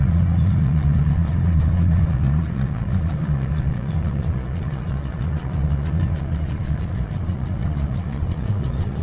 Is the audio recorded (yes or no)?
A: no